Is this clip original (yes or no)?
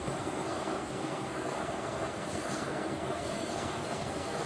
no